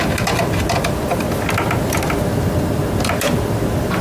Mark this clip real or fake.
real